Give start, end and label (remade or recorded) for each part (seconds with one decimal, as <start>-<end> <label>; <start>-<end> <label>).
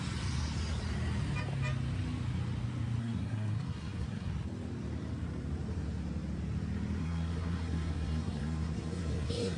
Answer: 0.0-3.0 recorded; 3.0-4.3 remade; 4.3-7.0 recorded; 7.0-9.6 remade